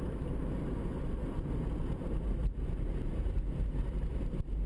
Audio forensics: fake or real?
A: fake